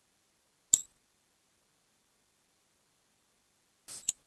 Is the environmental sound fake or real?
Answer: real